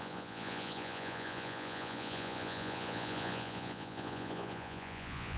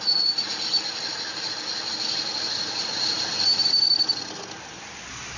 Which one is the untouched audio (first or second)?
second